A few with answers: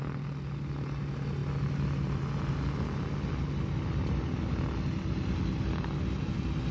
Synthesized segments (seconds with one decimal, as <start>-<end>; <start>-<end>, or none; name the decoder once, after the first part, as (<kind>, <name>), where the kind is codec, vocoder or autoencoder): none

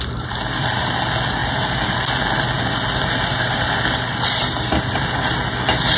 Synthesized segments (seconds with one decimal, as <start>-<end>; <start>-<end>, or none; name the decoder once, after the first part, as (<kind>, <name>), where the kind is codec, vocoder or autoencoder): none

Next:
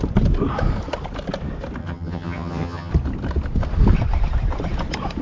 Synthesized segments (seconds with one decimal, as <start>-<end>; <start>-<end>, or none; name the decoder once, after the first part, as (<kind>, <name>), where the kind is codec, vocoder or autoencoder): 1.8-2.9 (vocoder, HiFi-GAN)

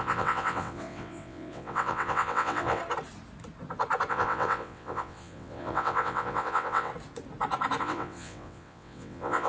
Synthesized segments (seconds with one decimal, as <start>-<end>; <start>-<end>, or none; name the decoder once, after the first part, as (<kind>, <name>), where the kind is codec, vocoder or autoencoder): 0.0-2.8 (vocoder, WaveNeXt); 4.1-6.9; 7.8-9.5

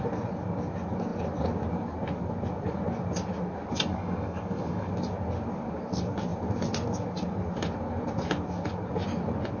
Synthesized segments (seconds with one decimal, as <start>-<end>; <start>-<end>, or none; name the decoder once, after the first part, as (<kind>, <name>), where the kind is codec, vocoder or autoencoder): 3.9-4.9 (codec, DAC)